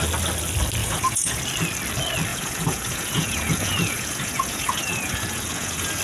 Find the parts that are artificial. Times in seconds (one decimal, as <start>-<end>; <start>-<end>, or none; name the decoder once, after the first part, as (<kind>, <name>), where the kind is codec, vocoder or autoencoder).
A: 0.8-1.4 (vocoder, Vocos); 2.3-6.0